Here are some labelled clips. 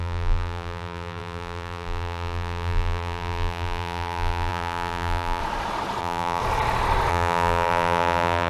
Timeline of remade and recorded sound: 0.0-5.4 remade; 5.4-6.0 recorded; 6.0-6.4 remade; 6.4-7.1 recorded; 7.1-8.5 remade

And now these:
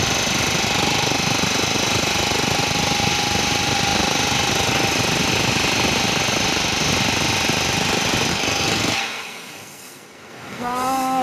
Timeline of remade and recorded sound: 0.0-8.3 recorded; 8.3-11.2 remade

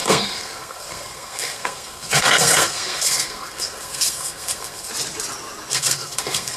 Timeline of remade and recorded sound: 0.0-4.9 remade; 4.9-5.7 recorded; 5.7-6.6 remade